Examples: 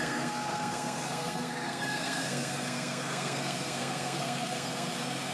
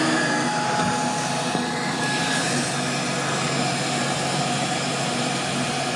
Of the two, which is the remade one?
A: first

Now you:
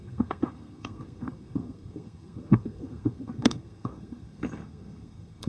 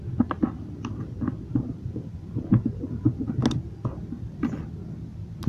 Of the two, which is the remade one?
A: first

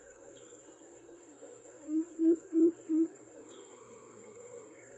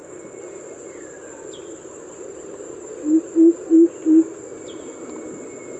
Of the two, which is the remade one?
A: first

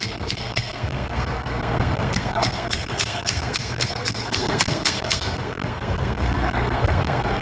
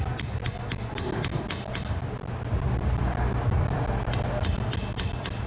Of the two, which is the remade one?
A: first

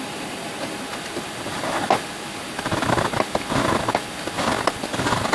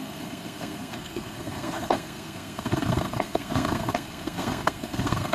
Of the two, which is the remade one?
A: second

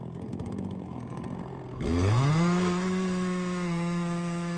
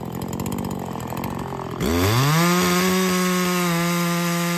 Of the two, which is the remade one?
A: first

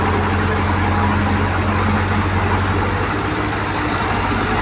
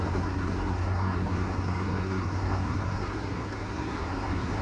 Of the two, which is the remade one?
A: second